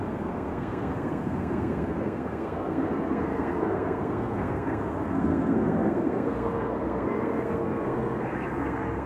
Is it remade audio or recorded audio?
remade